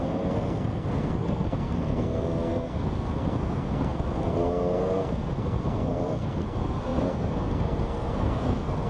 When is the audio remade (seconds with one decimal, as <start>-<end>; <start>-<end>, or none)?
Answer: 0.0-8.9